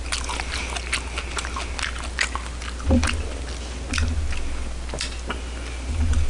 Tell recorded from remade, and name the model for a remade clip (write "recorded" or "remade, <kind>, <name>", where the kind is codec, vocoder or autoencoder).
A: recorded